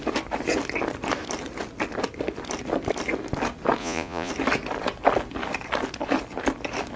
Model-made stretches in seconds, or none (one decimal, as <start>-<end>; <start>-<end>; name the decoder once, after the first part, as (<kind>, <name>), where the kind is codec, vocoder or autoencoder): 3.8-4.3 (vocoder, Vocos)